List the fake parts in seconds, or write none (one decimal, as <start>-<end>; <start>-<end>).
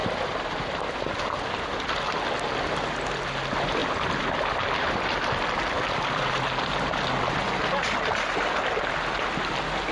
none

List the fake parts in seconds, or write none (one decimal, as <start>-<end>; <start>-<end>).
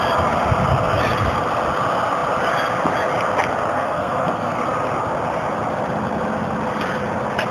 3.7-4.6